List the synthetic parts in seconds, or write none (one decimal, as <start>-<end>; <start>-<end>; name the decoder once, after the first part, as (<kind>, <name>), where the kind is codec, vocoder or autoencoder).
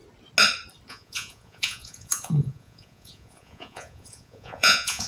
0.9-5.1 (vocoder, Vocos)